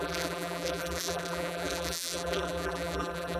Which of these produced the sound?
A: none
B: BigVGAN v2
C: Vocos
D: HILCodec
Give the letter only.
B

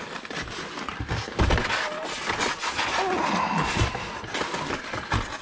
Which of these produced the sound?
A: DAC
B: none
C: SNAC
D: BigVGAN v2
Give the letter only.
B